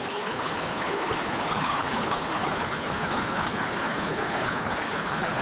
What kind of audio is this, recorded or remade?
remade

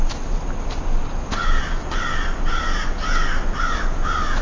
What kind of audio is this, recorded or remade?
recorded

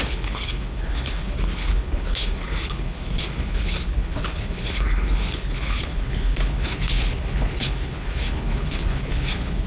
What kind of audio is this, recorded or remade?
remade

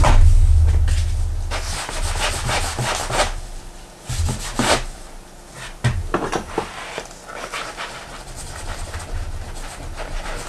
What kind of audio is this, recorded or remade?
recorded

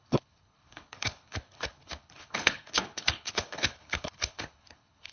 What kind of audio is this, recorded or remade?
remade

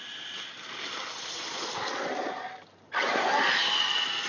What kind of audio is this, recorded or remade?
recorded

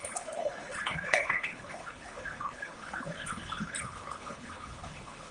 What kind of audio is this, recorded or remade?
remade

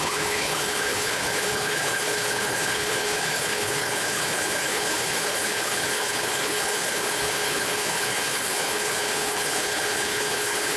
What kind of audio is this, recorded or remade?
remade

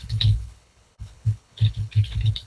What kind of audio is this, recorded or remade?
remade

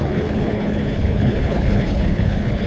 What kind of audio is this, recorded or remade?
remade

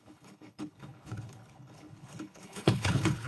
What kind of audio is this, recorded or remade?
remade